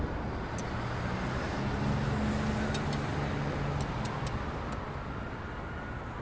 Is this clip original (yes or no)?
yes